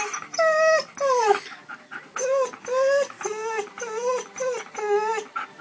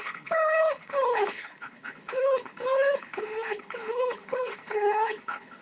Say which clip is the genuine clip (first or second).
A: first